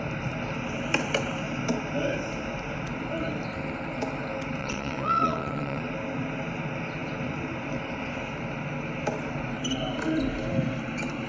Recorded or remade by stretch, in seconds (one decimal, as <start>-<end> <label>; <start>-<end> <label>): 0.0-4.6 recorded; 4.6-5.8 remade; 5.8-11.3 recorded